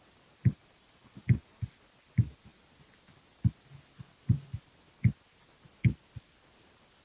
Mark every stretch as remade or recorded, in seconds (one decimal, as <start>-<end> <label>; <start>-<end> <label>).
0.0-0.4 recorded; 0.4-1.7 remade; 1.7-7.0 recorded